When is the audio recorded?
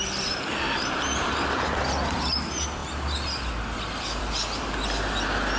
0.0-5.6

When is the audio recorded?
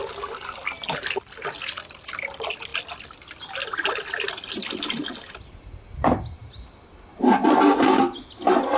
0.0-8.8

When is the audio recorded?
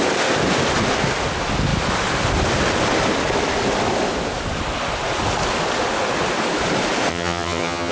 0.0-7.1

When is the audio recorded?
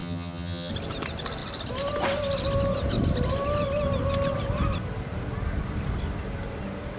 0.7-7.0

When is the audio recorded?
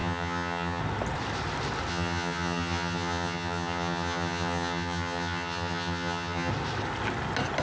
0.8-1.9; 6.5-7.6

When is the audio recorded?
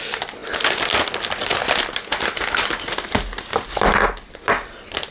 0.0-5.1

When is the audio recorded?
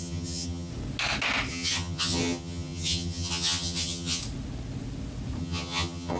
0.7-1.5; 4.2-5.4